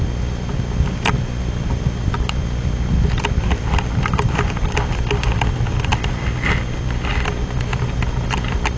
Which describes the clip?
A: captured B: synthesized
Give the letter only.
A